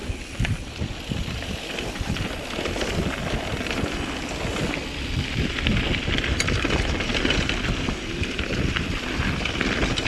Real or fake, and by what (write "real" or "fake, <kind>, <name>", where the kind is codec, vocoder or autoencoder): real